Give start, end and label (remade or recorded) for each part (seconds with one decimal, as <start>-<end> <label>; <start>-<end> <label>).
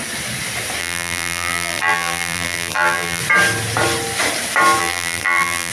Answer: 0.0-0.8 recorded; 0.8-3.2 remade; 3.2-4.8 recorded; 4.8-5.7 remade